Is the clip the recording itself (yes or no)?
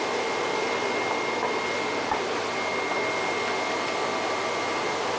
yes